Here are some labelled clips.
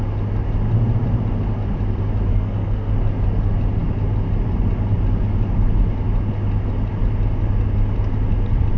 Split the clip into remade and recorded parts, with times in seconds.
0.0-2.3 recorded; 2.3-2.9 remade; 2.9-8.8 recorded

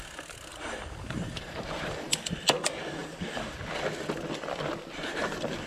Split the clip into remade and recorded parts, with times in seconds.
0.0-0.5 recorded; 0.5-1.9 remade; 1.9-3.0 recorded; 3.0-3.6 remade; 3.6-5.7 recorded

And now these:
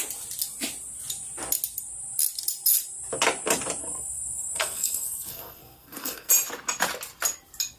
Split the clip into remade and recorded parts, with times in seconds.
0.0-3.8 recorded; 3.8-6.3 remade; 6.3-7.8 recorded

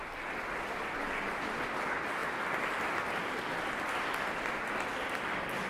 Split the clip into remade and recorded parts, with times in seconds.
0.0-5.7 recorded

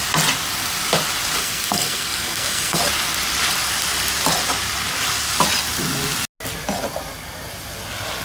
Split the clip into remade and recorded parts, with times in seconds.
0.0-1.4 recorded; 1.4-2.8 remade; 2.8-8.2 recorded

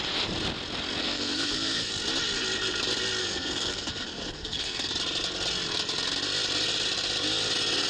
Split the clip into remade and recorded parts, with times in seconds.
0.0-1.0 recorded; 1.0-1.9 remade; 1.9-3.2 recorded; 3.2-4.9 remade; 4.9-7.9 recorded

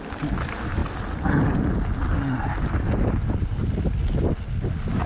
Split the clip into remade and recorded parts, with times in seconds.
0.0-5.1 recorded